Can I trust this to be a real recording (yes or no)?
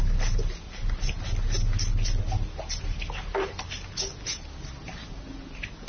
yes